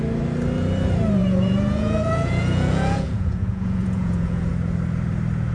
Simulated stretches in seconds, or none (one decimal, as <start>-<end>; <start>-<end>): 1.2-4.5